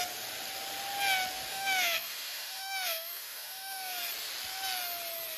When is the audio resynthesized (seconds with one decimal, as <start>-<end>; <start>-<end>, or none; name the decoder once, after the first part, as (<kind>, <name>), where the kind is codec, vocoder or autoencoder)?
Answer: 1.5-4.0 (autoencoder, DAC-VAE)